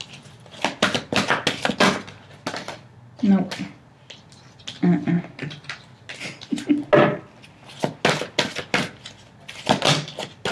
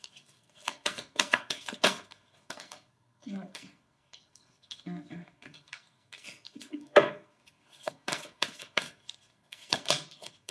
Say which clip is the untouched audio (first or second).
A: first